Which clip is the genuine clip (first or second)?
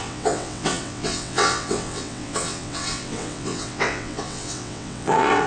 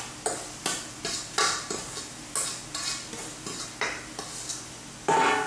second